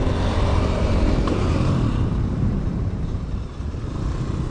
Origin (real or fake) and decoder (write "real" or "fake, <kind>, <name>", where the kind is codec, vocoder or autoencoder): fake, vocoder, BigVGAN v2